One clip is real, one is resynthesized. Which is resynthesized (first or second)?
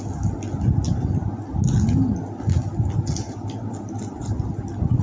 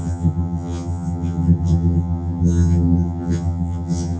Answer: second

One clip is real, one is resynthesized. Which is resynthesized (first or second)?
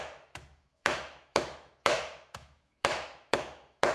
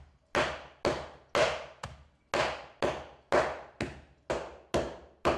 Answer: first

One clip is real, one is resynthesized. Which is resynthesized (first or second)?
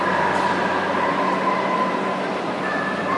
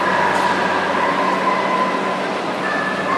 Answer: first